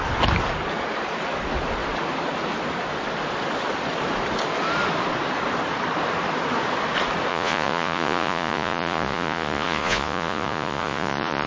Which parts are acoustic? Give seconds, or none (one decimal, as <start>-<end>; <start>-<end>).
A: 0.0-7.3